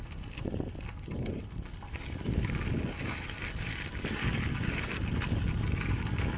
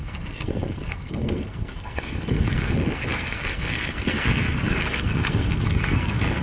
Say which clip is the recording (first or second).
first